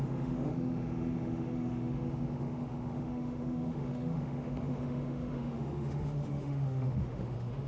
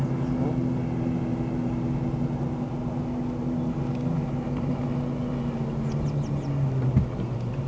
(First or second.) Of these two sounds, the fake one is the first